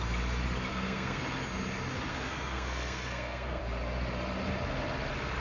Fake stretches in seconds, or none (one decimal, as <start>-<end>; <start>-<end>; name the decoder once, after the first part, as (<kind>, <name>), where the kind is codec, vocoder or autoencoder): 0.7-1.2 (codec, SNAC); 2.1-3.6